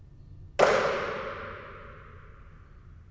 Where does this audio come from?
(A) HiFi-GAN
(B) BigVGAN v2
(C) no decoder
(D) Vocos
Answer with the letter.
C